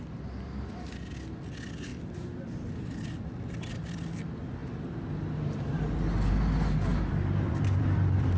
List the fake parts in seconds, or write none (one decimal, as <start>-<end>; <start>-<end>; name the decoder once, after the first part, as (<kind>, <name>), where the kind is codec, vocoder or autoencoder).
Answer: 1.9-4.1 (vocoder, BigVGAN v2); 6.9-8.4